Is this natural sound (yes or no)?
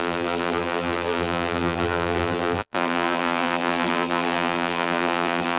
no